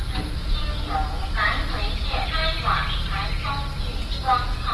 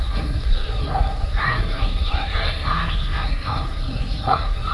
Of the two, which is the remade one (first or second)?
second